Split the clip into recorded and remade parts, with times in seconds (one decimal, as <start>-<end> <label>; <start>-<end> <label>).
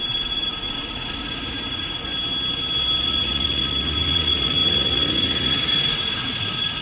0.0-2.1 remade; 2.1-3.0 recorded; 3.0-6.8 remade